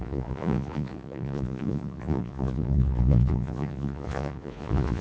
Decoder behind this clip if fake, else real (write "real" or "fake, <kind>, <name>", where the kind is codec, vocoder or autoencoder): fake, vocoder, Vocos